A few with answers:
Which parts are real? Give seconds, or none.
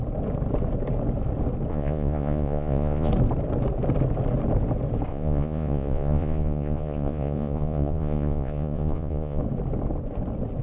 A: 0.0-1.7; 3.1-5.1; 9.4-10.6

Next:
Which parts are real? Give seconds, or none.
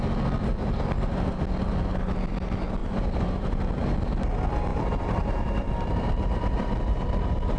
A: 0.0-2.8; 3.7-4.7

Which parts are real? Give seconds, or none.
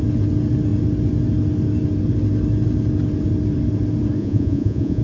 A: 0.0-4.2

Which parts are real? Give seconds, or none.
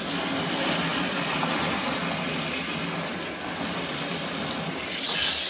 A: 0.0-0.9; 1.9-3.1; 4.7-5.5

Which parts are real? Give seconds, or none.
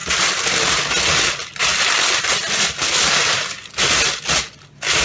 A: 0.0-5.0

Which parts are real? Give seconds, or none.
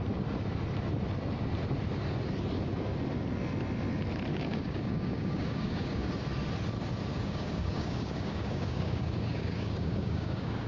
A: 0.0-4.3; 6.1-7.1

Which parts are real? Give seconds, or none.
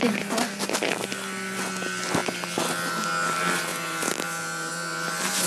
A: 0.0-5.5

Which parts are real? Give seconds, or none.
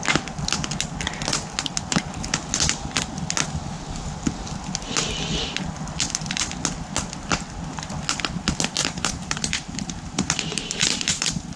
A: 0.0-8.8